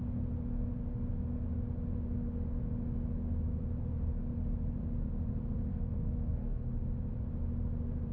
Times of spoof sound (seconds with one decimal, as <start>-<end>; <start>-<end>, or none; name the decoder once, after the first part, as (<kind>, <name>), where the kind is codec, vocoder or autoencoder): 5.7-6.7 (codec, SNAC)